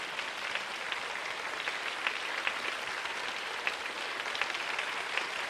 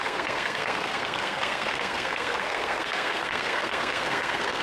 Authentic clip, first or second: first